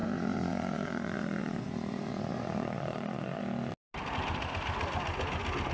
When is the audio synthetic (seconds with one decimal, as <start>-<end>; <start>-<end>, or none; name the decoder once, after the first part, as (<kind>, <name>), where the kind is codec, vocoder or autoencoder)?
0.0-3.4 (vocoder, Vocos)